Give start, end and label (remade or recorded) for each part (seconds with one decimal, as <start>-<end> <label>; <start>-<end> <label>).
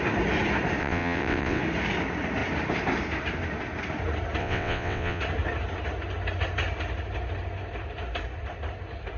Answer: 0.0-0.8 recorded; 0.8-1.6 remade; 1.6-4.4 recorded; 4.4-5.2 remade; 5.2-9.2 recorded